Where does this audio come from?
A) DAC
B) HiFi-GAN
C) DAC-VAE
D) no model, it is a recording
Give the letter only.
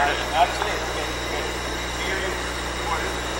D